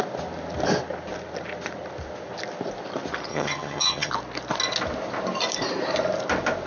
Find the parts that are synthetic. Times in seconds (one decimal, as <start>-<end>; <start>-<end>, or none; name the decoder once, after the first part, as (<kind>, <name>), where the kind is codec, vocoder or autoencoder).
3.3-4.1 (vocoder, HiFi-GAN)